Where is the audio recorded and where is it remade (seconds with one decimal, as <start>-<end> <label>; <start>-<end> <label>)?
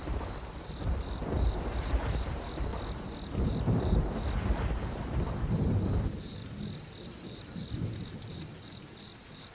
0.0-2.7 remade; 2.7-3.4 recorded; 3.4-6.4 remade; 6.4-7.0 recorded; 7.0-7.6 remade; 7.6-8.1 recorded; 8.1-9.5 remade